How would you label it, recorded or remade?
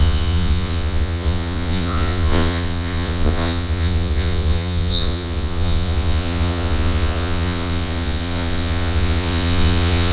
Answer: remade